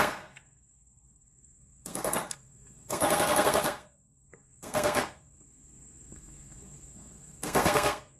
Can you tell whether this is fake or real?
fake